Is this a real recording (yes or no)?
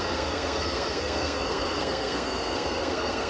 no